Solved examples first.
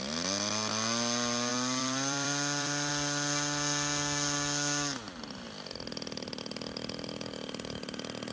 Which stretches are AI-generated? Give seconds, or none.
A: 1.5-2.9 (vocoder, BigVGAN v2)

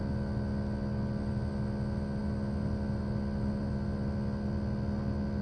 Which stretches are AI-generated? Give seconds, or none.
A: none

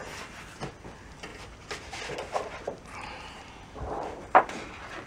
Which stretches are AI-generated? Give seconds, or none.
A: 1.3-4.4 (vocoder, BigVGAN v2)